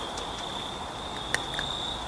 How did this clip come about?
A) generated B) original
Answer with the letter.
B